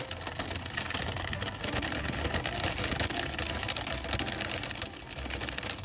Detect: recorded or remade recorded